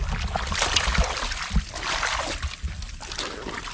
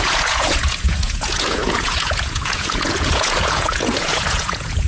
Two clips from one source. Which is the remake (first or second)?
second